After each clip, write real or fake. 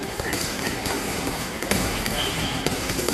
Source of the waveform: fake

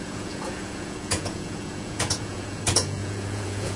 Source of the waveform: fake